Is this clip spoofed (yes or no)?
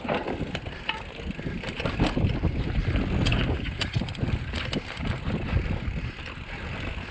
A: no